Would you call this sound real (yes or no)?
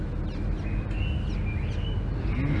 yes